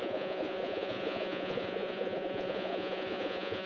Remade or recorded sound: remade